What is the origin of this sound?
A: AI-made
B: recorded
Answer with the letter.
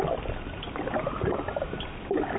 A